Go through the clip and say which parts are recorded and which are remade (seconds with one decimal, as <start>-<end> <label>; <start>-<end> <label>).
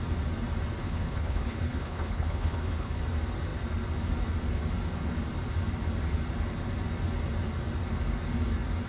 0.0-0.8 recorded; 0.8-3.0 remade; 3.0-8.9 recorded